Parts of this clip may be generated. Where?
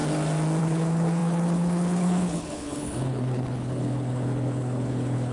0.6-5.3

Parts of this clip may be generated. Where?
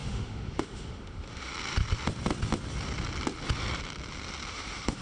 0.0-1.5; 4.5-5.0